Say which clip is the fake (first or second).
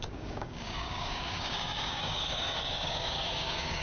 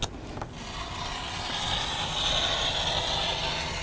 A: first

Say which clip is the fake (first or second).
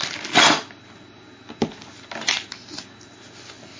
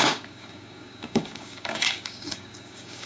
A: second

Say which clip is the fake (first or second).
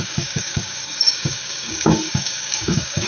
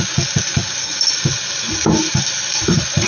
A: first